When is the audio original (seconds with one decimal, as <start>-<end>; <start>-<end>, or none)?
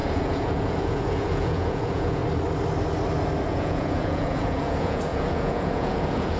2.2-3.5